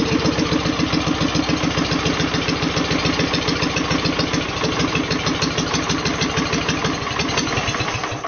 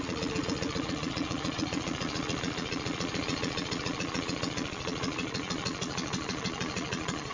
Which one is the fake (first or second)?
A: second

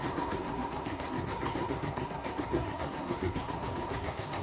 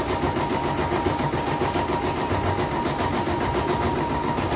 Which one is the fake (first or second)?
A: first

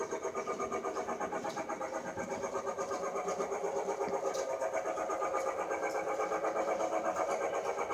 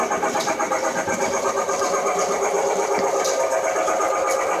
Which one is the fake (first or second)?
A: second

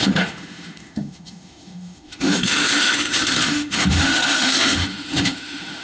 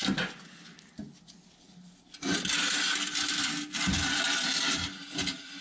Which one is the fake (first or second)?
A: first